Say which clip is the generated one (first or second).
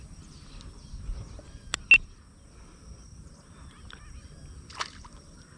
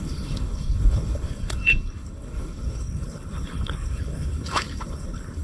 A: second